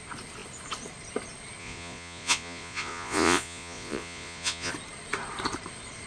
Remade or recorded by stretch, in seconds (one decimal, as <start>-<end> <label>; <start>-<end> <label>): 0.0-1.6 recorded; 1.6-4.7 remade; 4.7-6.1 recorded